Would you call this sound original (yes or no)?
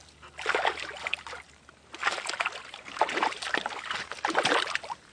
yes